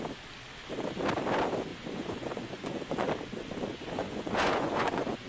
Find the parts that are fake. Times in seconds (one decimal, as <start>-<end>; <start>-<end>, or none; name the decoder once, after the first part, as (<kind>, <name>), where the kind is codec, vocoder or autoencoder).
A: 1.7-3.1 (vocoder, Vocos); 3.7-5.3